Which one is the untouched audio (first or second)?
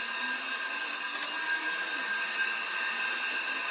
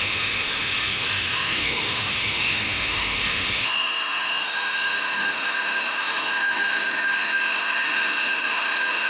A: first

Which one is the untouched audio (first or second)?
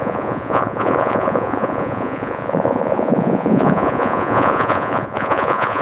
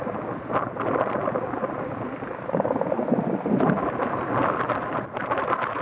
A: second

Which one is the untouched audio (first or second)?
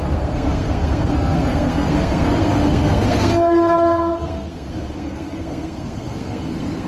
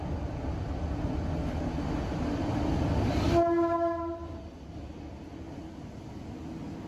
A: second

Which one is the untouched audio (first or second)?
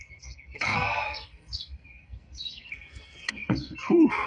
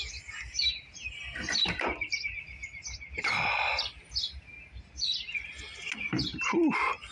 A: second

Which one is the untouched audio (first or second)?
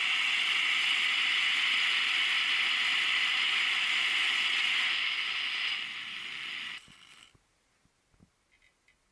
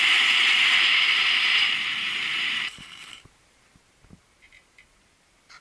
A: first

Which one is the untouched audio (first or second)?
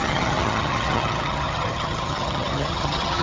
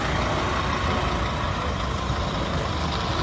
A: second